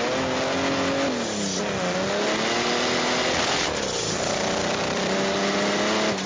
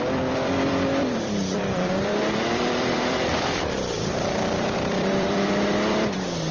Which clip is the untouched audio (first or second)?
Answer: first